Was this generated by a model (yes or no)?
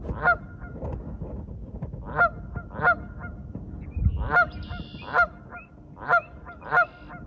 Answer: no